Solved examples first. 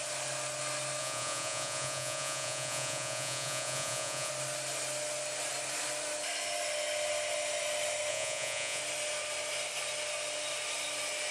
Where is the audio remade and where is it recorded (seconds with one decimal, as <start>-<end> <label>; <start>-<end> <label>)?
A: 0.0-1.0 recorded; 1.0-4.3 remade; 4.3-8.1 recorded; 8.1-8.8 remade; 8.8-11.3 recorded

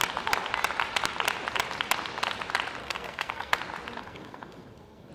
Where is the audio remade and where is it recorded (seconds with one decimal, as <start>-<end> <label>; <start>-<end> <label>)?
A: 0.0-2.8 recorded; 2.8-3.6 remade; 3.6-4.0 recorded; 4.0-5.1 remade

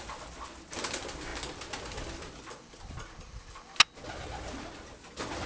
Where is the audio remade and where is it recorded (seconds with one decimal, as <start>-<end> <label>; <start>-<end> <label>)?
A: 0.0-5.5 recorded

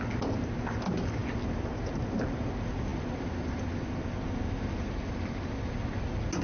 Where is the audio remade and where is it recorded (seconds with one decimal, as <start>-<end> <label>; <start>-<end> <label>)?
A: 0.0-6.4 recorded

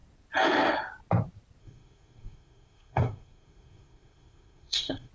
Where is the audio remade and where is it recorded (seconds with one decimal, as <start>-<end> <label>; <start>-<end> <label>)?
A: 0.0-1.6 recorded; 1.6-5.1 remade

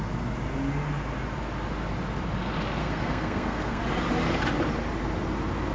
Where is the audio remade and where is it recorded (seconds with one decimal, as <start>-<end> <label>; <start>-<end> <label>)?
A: 0.0-2.8 recorded; 2.8-3.8 remade; 3.8-5.7 recorded

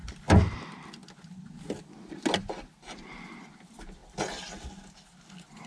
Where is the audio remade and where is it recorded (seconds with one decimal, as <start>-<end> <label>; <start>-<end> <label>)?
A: 0.0-5.7 recorded

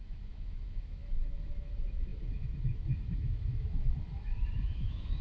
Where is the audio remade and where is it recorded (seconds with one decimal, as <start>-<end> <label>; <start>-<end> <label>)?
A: 0.0-5.2 remade